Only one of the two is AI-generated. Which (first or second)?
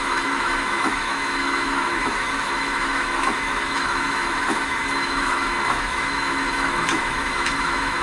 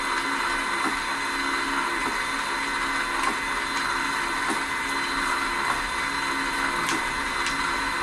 first